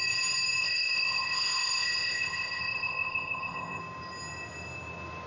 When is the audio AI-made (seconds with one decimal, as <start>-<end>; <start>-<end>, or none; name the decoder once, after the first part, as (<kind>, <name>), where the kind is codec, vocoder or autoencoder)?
0.6-3.8 (codec, ZipCodec)